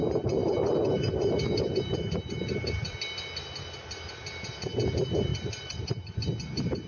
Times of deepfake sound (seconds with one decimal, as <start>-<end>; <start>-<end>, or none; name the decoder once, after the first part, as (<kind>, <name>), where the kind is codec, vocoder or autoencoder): 0.4-2.9 (vocoder, BigVGAN v2); 5.3-6.2